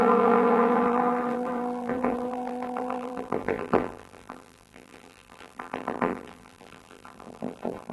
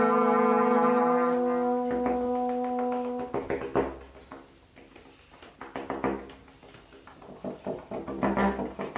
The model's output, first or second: first